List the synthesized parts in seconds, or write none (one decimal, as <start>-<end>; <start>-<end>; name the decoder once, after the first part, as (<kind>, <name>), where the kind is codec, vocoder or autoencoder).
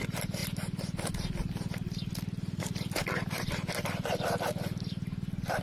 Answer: none